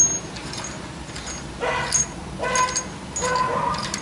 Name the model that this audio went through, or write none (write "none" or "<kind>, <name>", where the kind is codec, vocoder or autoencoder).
none